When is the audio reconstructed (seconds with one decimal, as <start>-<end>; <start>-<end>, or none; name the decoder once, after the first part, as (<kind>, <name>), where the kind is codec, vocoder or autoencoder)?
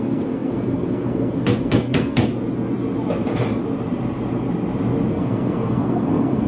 0.0-2.3 (codec, SNAC); 5.1-6.5